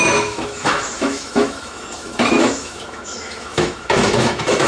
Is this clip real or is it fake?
fake